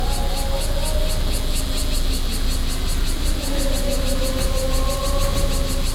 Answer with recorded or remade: recorded